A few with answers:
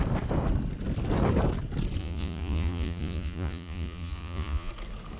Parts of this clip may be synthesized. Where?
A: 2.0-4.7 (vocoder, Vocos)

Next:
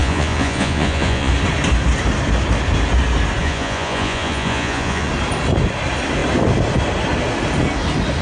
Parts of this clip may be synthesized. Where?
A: 0.0-1.3 (vocoder, Vocos); 3.4-5.1

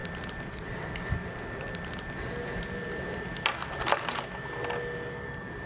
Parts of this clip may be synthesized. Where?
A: none

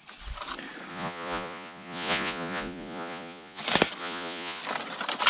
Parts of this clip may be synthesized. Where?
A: 0.9-3.6 (vocoder, Vocos); 4.0-4.6

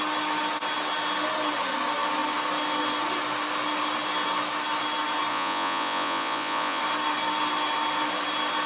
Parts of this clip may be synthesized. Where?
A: 5.3-6.8 (vocoder, Vocos)

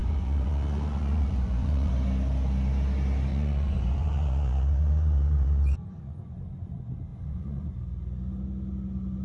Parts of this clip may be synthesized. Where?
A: 0.0-1.9 (vocoder, Vocos); 3.3-6.2; 7.1-7.7